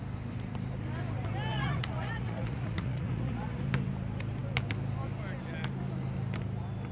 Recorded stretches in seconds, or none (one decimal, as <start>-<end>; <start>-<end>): 0.0-1.5; 3.6-6.9